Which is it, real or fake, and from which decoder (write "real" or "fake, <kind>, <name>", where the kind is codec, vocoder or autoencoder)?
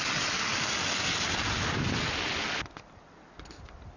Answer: real